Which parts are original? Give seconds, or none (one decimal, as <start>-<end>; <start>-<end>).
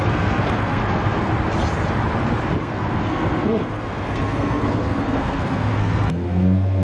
1.3-2.6